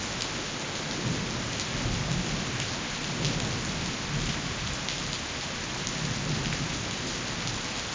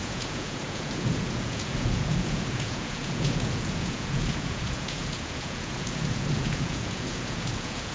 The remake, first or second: second